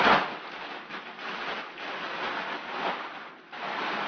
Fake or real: real